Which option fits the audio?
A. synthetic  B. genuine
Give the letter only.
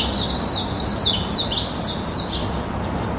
B